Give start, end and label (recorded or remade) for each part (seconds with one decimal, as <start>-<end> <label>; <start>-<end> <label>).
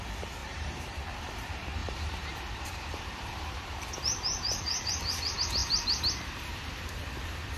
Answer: 0.0-0.4 recorded; 0.4-1.0 remade; 1.0-1.8 recorded; 1.8-4.9 remade; 4.9-5.6 recorded; 5.6-7.0 remade; 7.0-7.6 recorded